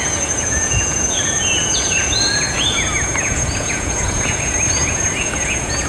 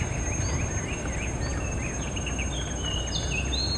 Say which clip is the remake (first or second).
first